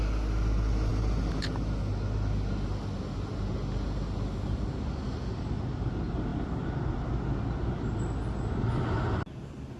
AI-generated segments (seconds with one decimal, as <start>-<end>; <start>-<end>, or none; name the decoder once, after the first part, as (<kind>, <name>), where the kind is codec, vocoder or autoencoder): none